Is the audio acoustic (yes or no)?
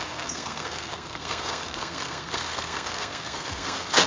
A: no